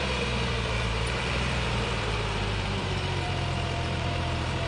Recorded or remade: remade